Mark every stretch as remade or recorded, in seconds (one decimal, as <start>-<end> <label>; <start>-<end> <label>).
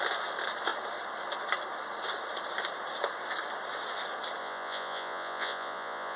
0.0-4.4 recorded; 4.4-6.2 remade